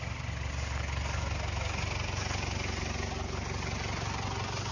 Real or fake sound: real